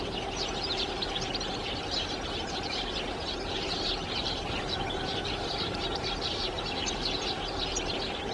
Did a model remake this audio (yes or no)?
yes